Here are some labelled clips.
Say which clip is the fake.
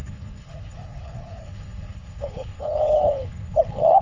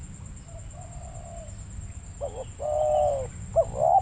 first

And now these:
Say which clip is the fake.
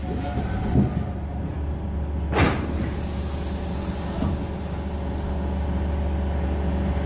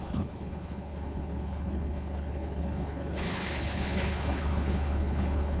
second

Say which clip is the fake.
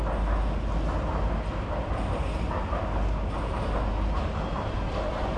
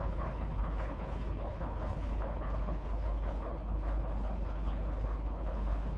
second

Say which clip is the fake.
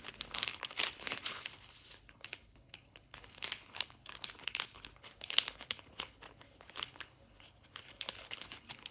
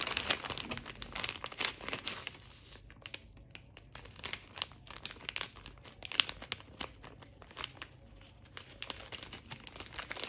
first